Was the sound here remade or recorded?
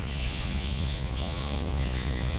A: remade